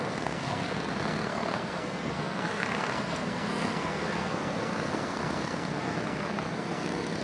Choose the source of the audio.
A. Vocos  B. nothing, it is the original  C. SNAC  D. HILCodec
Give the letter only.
C